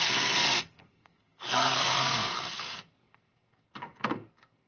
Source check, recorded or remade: remade